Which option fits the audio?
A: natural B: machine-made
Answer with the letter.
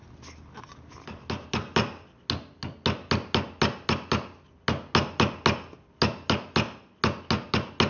A